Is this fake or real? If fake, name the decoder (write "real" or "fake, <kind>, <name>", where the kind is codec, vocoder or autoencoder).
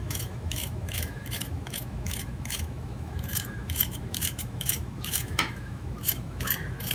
fake, autoencoder, DAC-VAE